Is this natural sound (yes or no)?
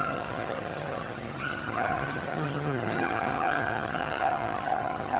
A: no